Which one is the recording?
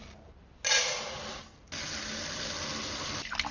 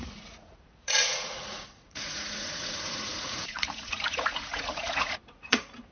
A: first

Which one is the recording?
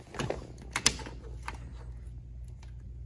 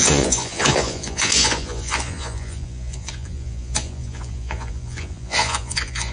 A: first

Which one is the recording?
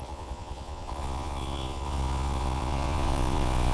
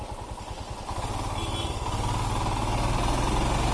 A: second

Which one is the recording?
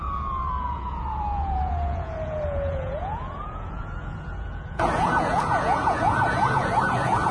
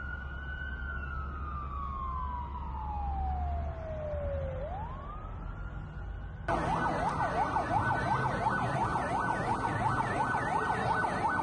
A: second